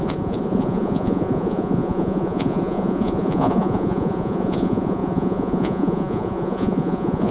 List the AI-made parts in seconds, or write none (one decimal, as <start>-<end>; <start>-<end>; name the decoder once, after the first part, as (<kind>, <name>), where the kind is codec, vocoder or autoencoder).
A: 0.0-7.3 (vocoder, Vocos)